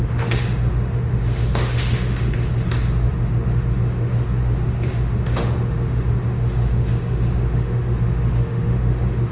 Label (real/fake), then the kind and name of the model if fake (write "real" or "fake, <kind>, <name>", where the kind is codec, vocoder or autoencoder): fake, autoencoder, DAC-VAE